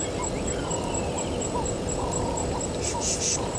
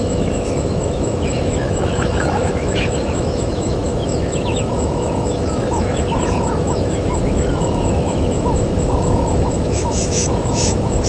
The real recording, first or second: first